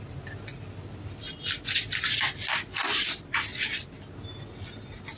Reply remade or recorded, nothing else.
recorded